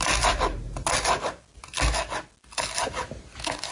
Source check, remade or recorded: recorded